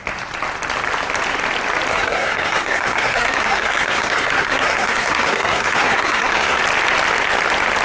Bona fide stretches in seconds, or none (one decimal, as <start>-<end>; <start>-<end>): 0.0-1.9; 6.6-7.8